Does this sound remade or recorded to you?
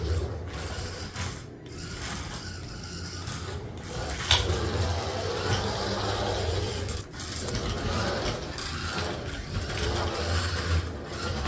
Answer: recorded